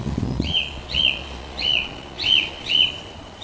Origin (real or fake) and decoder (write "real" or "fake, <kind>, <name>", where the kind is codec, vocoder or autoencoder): fake, vocoder, Vocos